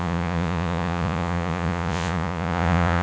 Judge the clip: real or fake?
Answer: fake